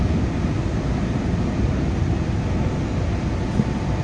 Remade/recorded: recorded